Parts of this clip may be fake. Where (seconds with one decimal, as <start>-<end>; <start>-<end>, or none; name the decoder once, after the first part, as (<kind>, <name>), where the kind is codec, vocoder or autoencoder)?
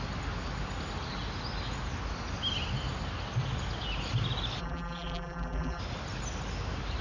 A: 4.6-5.8 (vocoder, BigVGAN v2)